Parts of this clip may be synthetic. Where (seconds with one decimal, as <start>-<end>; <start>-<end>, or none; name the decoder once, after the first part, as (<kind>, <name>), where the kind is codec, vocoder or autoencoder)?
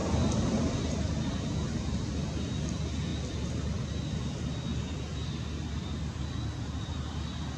none